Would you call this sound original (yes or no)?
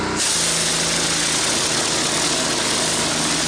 yes